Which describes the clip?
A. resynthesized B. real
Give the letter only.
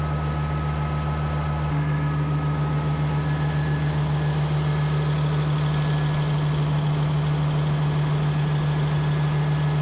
B